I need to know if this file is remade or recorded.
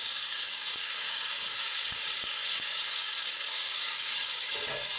remade